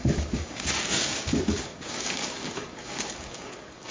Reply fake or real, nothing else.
fake